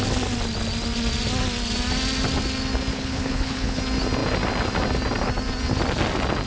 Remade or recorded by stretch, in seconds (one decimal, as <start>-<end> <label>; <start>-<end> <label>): 0.0-2.9 recorded; 2.9-3.8 remade; 3.8-6.5 recorded